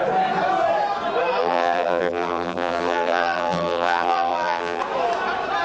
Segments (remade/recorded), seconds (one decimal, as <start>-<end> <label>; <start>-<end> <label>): 0.0-1.4 recorded; 1.4-4.8 remade; 4.8-5.6 recorded